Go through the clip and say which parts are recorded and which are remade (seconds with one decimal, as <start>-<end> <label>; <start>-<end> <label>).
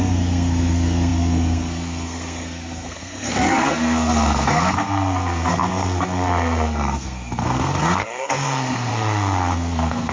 0.0-10.1 remade